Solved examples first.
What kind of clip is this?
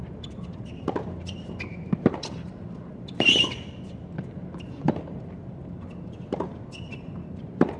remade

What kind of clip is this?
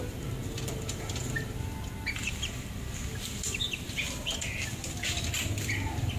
remade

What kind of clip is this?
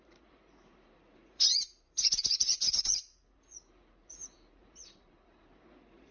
remade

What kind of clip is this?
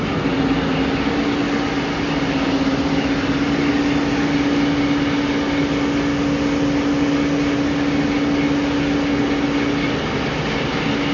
recorded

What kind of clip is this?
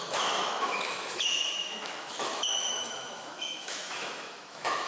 remade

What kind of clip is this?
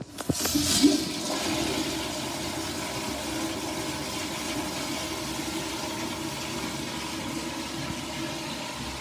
recorded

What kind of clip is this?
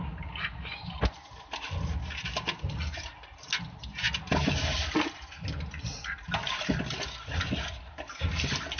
recorded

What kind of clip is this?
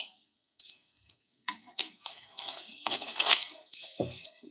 remade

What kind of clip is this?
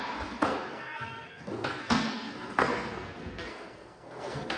remade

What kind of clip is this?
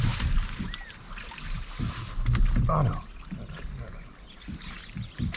recorded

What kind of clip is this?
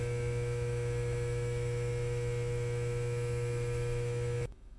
remade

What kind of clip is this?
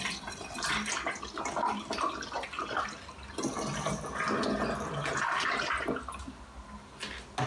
recorded